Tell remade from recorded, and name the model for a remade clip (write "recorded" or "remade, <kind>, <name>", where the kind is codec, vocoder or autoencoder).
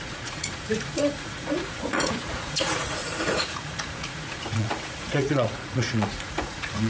remade, vocoder, Vocos